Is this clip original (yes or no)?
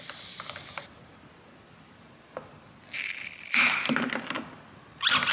yes